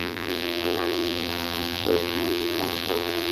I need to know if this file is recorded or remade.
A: remade